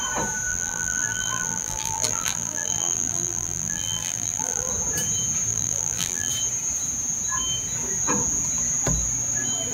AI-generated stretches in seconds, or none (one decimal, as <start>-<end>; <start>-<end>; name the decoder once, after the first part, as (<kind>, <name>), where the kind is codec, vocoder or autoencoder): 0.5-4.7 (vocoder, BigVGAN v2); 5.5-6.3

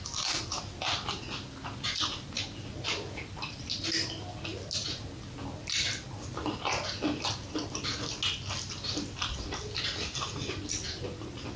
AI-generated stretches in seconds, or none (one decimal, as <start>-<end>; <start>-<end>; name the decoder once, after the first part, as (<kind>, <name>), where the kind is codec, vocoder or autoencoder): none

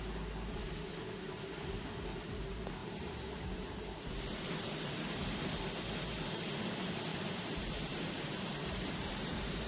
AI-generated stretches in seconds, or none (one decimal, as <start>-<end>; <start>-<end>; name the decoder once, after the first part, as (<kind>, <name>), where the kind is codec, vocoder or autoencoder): 2.8-5.6 (vocoder, BigVGAN v2); 7.1-9.7